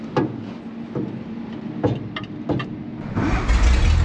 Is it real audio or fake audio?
real